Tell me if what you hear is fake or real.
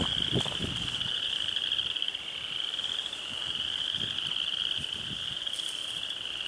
real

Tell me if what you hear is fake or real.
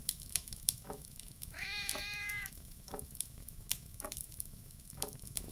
fake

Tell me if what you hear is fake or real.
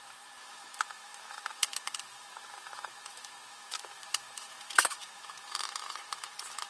fake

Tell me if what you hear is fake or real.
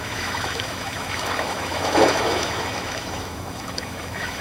fake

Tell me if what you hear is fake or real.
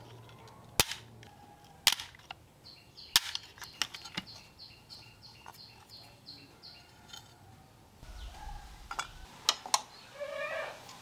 real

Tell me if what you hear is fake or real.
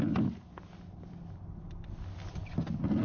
real